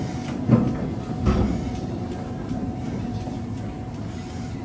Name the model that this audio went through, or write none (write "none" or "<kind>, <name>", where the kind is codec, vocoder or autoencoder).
none